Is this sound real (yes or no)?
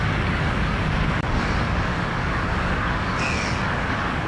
no